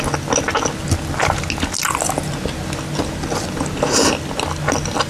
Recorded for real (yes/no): yes